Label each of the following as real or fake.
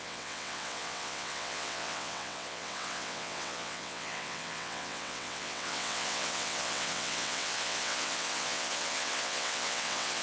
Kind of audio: fake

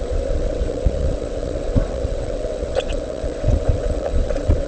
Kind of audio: fake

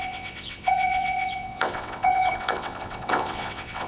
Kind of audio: fake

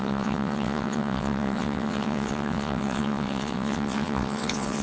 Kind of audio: fake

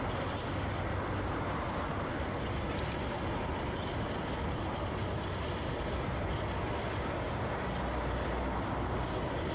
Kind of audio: real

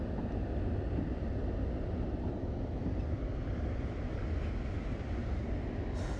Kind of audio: real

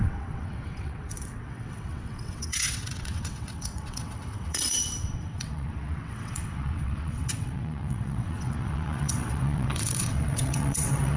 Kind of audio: fake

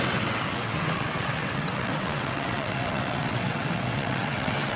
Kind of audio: fake